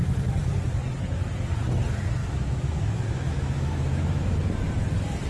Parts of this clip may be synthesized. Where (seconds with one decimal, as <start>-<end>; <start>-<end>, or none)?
2.2-4.4

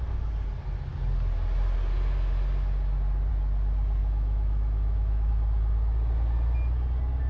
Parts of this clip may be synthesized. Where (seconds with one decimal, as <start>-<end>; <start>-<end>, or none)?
4.0-5.3

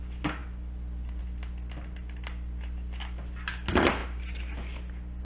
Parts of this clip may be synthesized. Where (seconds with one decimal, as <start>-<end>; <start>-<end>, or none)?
none

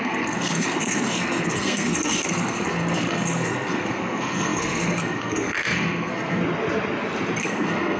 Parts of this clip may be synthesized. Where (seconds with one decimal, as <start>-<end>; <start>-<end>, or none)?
0.0-6.4; 7.4-8.0

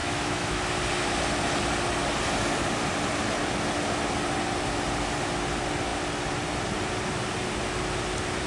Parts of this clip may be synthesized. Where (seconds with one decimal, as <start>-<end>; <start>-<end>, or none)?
0.0-0.6